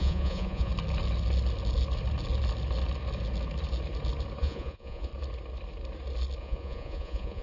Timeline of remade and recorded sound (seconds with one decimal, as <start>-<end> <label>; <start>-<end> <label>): 0.0-0.7 remade; 0.7-4.4 recorded; 4.4-5.1 remade; 5.1-6.4 recorded; 6.4-7.4 remade